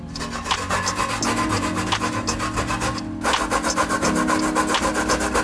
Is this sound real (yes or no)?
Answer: yes